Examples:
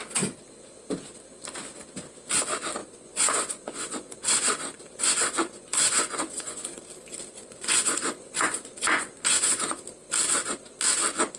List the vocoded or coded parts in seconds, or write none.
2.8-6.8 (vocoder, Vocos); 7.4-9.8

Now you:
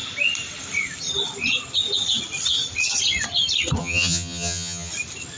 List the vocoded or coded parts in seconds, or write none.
3.8-4.9 (vocoder, HiFi-GAN)

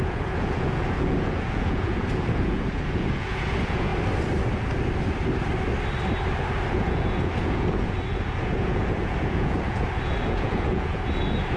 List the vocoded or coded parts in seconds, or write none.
0.0-3.9 (vocoder, Vocos); 6.7-11.6

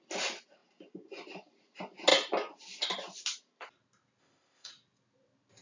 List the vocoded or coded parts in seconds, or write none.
4.2-4.7 (codec, ZipCodec)

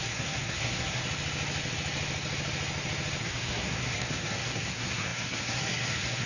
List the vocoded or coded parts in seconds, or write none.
0.0-1.0 (codec, SNAC); 3.2-6.3